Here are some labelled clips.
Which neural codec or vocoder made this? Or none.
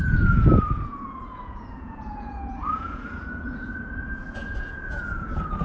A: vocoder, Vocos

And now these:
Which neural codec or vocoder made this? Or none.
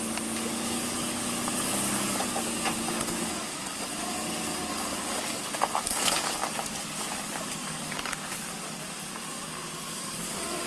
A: codec, DAC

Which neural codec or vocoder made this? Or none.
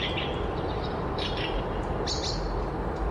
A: none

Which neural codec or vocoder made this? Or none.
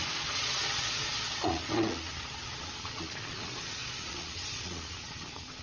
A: vocoder, Vocos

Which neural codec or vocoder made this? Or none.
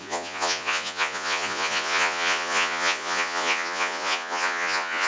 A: vocoder, Vocos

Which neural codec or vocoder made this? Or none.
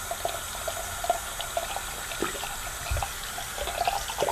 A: none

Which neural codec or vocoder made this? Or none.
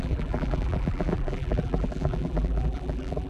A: vocoder, BigVGAN v2